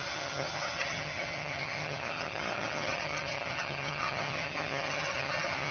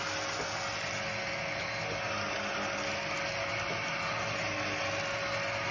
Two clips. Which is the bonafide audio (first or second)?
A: second